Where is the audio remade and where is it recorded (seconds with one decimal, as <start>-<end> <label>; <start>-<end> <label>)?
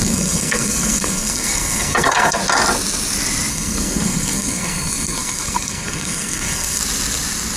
0.0-2.4 remade; 2.4-3.5 recorded; 3.5-6.8 remade; 6.8-7.6 recorded